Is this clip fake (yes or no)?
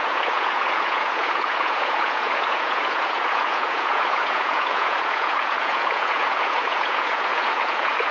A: yes